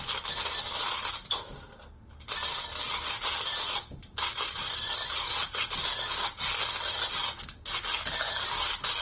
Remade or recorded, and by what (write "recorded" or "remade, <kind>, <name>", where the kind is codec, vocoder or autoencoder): recorded